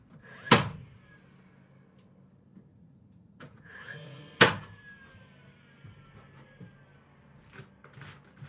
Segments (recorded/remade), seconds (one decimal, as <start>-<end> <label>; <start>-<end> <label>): 0.0-2.7 recorded; 2.7-4.2 remade; 4.2-8.5 recorded